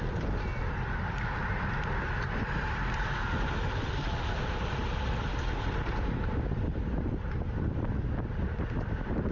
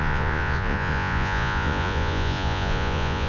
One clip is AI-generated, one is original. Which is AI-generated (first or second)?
second